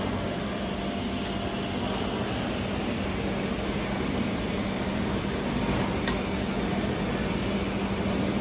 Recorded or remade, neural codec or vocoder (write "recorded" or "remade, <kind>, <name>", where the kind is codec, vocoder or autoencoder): recorded